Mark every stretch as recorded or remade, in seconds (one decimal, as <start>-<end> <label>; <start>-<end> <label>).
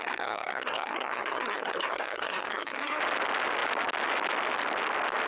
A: 0.0-3.0 remade; 3.0-5.3 recorded